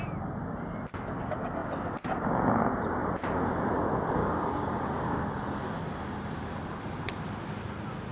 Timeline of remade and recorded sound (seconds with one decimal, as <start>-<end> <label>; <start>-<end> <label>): 0.0-4.2 recorded; 4.2-5.2 remade; 5.2-8.1 recorded

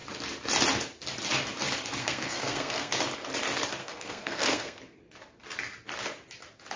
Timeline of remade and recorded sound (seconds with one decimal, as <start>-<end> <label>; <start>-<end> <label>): 0.0-2.0 recorded; 2.0-2.9 remade; 2.9-3.8 recorded; 3.8-4.8 remade; 4.8-6.8 recorded

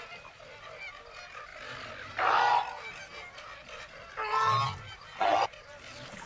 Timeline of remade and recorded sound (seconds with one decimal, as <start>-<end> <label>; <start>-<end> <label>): 0.0-6.3 recorded

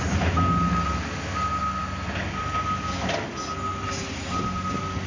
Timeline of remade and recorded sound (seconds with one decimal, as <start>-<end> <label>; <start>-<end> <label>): 0.0-5.1 recorded

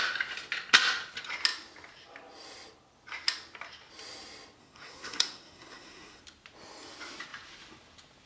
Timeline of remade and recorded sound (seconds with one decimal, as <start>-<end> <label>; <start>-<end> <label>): 0.0-4.6 recorded; 4.6-6.2 remade; 6.2-8.3 recorded

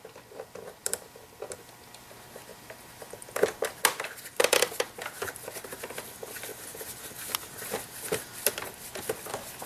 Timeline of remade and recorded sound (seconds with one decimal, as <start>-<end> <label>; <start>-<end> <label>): 0.0-9.7 recorded

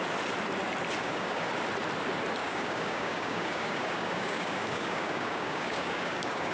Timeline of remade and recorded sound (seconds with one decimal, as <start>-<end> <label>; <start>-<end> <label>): 0.0-1.0 recorded; 1.0-1.5 remade; 1.5-2.4 recorded; 2.4-6.5 remade